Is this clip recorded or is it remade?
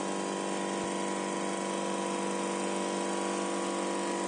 recorded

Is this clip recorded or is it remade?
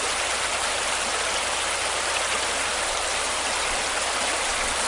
recorded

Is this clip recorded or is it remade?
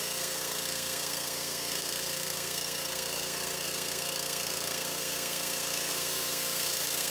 remade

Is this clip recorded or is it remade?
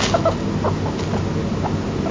recorded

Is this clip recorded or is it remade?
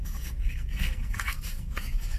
remade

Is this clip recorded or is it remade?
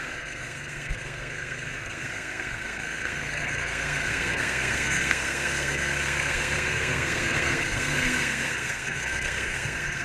remade